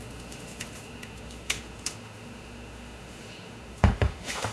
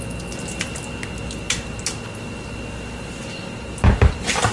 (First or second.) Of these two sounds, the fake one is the first